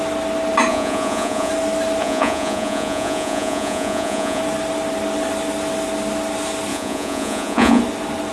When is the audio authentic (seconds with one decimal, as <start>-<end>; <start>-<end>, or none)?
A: 0.0-0.7; 1.5-2.0; 4.4-6.7; 7.8-8.3